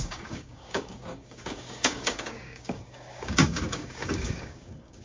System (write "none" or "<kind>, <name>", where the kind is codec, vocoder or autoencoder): codec, DAC